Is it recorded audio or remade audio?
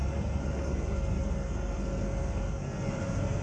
remade